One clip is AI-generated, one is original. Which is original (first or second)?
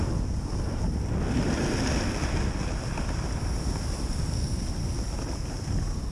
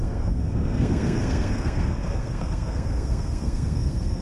first